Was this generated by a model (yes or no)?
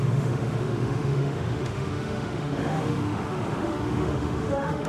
yes